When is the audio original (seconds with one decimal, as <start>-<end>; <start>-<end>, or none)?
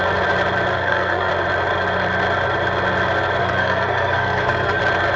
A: 0.0-0.7; 1.3-3.4; 4.8-5.2